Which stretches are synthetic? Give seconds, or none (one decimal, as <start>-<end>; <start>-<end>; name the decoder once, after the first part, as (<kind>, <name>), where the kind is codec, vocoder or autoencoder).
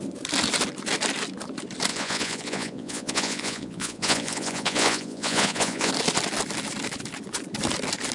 1.9-5.9 (vocoder, Vocos)